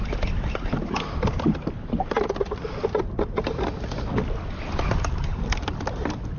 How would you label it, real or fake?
real